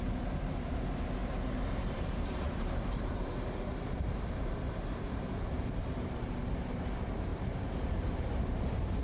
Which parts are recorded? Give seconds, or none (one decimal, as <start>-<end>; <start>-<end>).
0.0-1.2; 6.2-7.3; 8.3-9.0